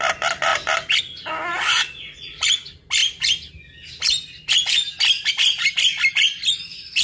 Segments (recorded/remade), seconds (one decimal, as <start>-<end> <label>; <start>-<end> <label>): 0.0-1.5 recorded; 1.5-2.4 remade; 2.4-7.0 recorded